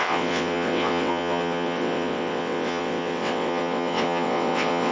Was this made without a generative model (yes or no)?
no